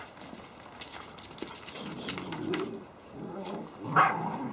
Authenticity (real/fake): real